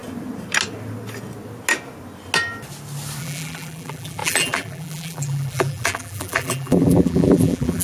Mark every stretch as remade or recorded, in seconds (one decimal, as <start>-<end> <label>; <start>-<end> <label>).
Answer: 0.0-3.2 recorded; 3.2-7.8 remade